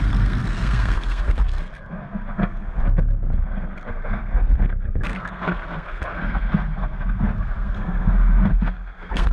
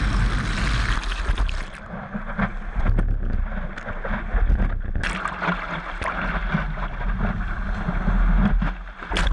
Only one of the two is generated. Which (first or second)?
first